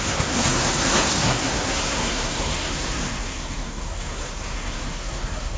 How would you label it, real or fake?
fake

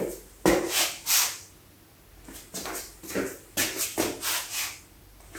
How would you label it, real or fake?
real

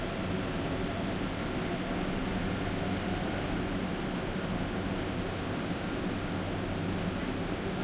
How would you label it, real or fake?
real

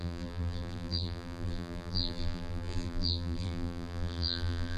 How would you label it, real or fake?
fake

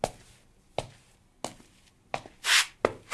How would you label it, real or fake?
real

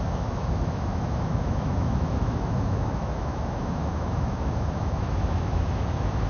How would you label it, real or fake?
fake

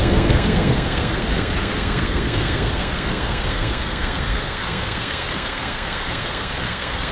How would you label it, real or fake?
fake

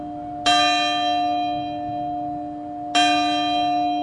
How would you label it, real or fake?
real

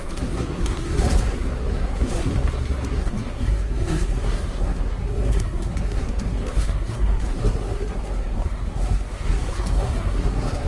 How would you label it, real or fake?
fake